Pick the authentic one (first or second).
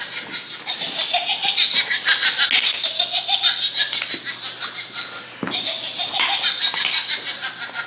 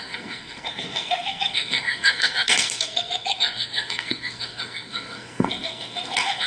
first